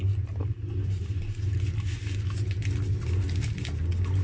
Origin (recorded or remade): recorded